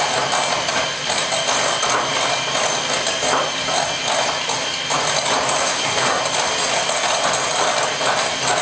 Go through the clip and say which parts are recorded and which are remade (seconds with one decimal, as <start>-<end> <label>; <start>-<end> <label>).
0.0-5.6 recorded; 5.6-6.2 remade; 6.2-8.6 recorded